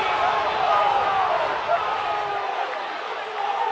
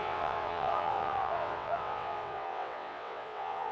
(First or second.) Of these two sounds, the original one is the first